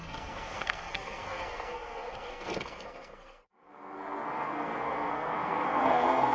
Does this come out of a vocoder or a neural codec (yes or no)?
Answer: yes